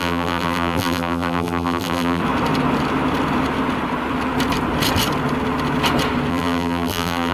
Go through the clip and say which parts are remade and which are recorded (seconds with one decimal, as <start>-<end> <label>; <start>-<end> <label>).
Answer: 0.0-2.2 remade; 2.2-6.3 recorded; 6.3-7.3 remade